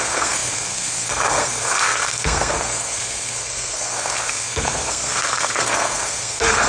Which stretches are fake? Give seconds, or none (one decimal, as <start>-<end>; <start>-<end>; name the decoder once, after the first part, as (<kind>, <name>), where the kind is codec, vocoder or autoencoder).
0.0-6.7 (codec, SNAC)